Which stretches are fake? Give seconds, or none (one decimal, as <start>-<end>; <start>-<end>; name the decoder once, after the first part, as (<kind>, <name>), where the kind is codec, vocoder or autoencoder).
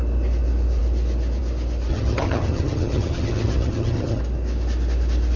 1.9-4.2 (vocoder, HiFi-GAN)